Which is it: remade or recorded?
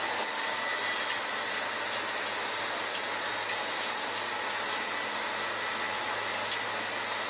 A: recorded